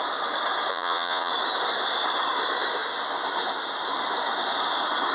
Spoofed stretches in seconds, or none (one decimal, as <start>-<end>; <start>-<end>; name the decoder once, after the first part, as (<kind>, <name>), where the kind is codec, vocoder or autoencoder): 0.7-1.3 (vocoder, Vocos)